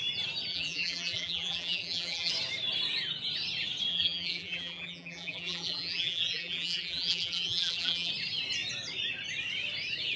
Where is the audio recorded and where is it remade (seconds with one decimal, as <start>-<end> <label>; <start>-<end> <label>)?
0.0-0.5 recorded; 0.5-2.3 remade; 2.3-3.9 recorded; 3.9-8.1 remade; 8.1-10.2 recorded